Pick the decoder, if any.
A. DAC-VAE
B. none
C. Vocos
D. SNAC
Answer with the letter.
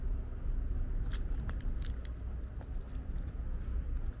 B